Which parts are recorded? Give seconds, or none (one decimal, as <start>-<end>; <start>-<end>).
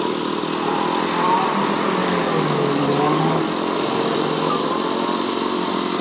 0.0-2.0; 3.4-6.0